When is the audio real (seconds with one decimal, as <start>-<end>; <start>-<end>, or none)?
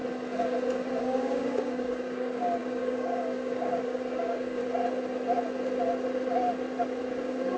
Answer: 0.0-1.0; 4.6-7.0